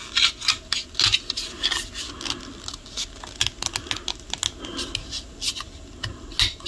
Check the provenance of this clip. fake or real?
real